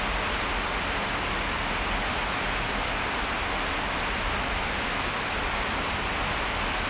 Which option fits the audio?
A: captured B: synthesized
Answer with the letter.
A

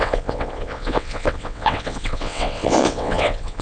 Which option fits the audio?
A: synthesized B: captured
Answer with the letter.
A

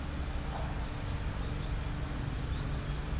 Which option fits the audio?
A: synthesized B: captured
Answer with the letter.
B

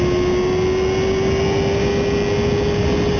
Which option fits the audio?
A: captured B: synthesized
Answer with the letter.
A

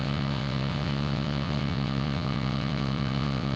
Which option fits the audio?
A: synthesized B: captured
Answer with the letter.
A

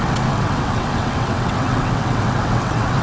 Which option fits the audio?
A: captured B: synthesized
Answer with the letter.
B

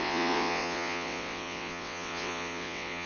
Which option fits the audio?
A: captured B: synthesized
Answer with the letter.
B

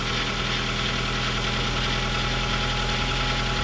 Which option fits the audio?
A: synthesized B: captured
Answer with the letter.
B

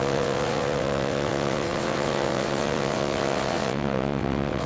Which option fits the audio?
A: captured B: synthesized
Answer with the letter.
B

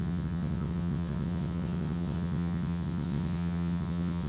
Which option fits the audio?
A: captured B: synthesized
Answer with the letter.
B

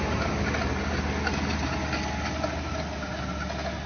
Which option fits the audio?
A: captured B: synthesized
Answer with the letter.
A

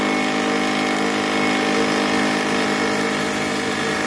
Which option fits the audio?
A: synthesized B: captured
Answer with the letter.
B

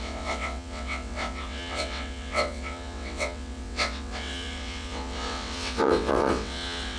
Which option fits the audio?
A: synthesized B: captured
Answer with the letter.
A